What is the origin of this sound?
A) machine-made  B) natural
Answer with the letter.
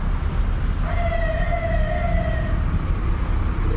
B